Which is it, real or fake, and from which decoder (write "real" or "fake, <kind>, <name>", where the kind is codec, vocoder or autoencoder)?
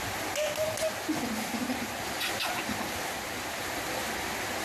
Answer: real